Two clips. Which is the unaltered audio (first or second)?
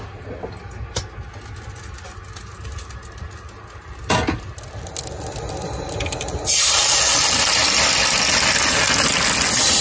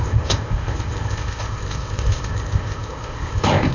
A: first